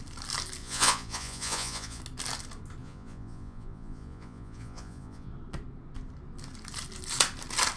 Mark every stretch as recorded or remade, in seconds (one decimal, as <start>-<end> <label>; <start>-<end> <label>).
0.0-0.6 recorded; 0.6-2.0 remade; 2.0-2.8 recorded; 2.8-5.3 remade; 5.3-7.8 recorded